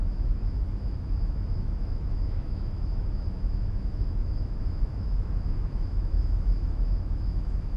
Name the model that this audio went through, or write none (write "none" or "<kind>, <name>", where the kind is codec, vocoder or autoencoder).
autoencoder, DAC-VAE